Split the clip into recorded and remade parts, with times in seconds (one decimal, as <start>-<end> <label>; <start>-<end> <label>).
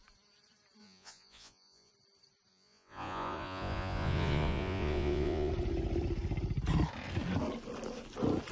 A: 0.0-0.8 recorded; 0.8-1.9 remade; 1.9-2.5 recorded; 2.5-5.5 remade; 5.5-8.5 recorded